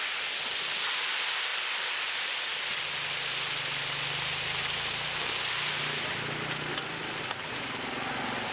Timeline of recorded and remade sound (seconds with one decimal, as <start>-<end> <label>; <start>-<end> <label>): 0.0-8.5 recorded